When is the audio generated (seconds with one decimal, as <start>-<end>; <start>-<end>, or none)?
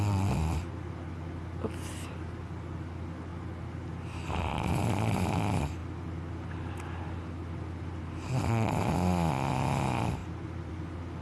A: none